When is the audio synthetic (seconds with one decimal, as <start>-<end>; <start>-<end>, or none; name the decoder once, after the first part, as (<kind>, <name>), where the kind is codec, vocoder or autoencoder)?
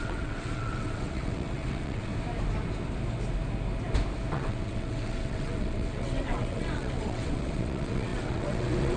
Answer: 0.0-2.1 (vocoder, WaveNeXt); 4.3-9.0